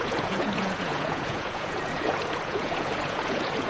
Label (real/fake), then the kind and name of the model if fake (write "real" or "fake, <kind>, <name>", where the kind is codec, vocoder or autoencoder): fake, vocoder, Vocos